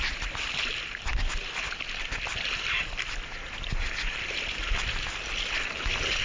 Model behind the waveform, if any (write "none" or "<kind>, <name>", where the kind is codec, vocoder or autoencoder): none